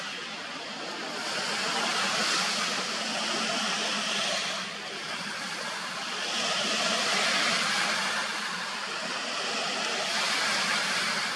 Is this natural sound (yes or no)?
yes